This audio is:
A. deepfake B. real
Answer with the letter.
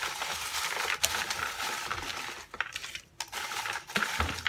B